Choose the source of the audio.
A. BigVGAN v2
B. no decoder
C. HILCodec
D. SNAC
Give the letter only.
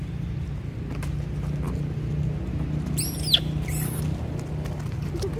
B